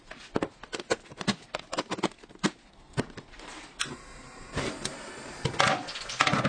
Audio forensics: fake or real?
real